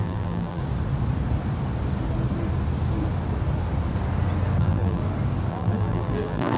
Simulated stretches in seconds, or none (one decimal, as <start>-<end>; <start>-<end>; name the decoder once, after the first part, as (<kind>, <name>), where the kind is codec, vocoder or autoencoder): 0.0-0.6 (vocoder, BigVGAN v2); 4.6-5.0; 5.5-6.6